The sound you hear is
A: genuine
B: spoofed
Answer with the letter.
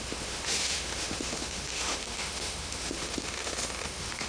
B